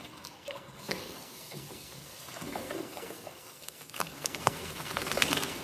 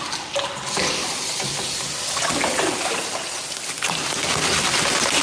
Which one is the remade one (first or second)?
first